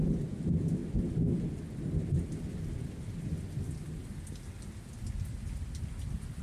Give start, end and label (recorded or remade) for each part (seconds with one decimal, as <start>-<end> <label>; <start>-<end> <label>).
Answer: 0.0-6.4 recorded